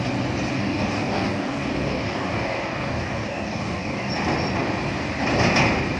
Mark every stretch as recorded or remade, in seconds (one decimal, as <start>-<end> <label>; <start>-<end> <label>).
0.0-0.5 recorded; 0.5-4.1 remade; 4.1-6.0 recorded